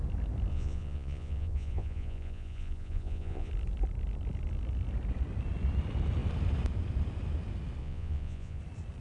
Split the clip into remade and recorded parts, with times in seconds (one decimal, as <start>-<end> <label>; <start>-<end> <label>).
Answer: 0.0-0.5 recorded; 0.5-3.5 remade; 3.5-7.8 recorded; 7.8-8.6 remade; 8.6-9.0 recorded